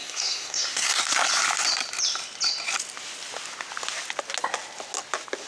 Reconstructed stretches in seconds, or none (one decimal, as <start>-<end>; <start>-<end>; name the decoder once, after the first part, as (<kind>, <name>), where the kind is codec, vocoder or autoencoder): 0.0-1.0 (codec, SNAC)